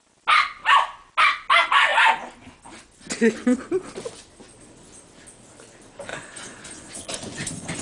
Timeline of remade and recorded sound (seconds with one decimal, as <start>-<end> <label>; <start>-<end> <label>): 0.0-6.1 recorded; 6.1-7.8 remade